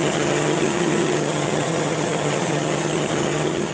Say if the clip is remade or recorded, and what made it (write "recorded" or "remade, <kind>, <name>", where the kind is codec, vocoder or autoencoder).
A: remade, vocoder, HiFi-GAN